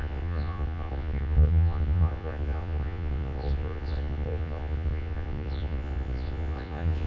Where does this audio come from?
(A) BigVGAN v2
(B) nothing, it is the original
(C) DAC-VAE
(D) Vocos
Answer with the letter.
D